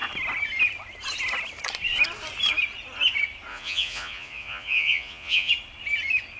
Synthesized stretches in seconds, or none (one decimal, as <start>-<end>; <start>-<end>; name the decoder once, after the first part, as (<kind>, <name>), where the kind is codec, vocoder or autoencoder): 3.5-5.5 (vocoder, Vocos)